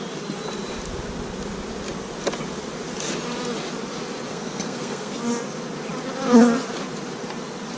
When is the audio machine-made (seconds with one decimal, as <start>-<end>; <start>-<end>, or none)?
4.3-5.2